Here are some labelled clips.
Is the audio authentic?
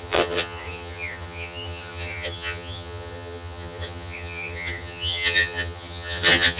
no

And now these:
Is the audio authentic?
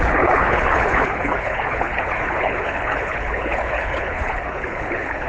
no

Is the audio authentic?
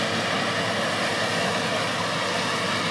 yes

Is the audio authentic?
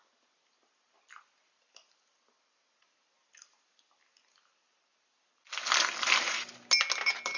yes